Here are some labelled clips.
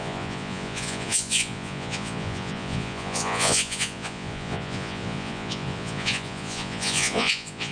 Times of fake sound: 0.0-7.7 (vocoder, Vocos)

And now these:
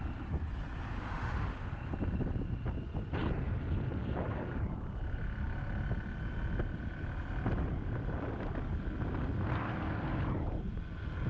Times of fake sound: 1.0-1.7 (autoencoder, DAC-VAE)

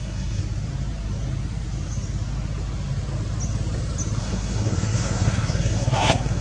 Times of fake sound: 0.0-0.4 (codec, SNAC); 4.2-6.4